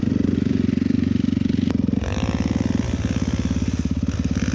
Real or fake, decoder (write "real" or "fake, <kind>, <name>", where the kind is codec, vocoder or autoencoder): real